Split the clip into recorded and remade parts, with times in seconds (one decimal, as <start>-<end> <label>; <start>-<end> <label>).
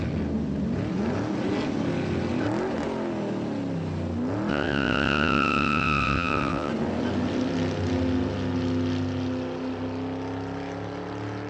0.0-4.5 recorded; 4.5-6.7 remade; 6.7-11.5 recorded